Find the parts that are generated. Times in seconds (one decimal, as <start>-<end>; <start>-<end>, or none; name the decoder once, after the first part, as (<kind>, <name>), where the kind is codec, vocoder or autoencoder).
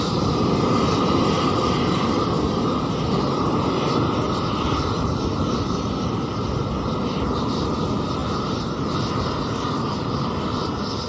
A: none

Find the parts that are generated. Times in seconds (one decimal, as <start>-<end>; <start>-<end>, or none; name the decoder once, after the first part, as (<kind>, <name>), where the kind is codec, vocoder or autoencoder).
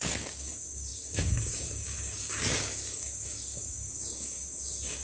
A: 0.0-5.0 (codec, DAC)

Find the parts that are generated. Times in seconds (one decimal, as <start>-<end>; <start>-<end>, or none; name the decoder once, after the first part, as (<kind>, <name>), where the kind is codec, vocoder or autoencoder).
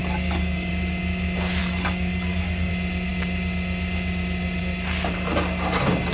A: 0.0-0.7 (codec, DAC); 1.6-2.7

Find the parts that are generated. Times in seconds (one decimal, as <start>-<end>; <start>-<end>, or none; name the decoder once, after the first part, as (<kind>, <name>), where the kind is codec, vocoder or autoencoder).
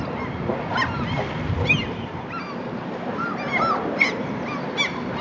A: none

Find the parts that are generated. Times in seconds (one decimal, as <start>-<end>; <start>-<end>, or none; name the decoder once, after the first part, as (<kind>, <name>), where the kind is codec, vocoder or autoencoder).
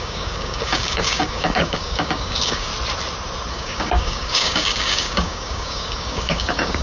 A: 0.0-2.7 (codec, DAC); 3.5-6.8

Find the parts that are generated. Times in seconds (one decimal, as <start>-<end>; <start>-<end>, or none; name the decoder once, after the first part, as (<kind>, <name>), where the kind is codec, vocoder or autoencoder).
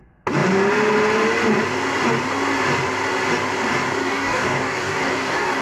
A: 4.0-5.6 (codec, DAC)